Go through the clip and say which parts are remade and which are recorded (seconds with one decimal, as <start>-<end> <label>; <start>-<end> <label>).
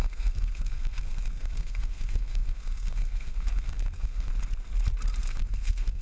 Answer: 0.0-4.3 remade; 4.3-5.2 recorded; 5.2-6.0 remade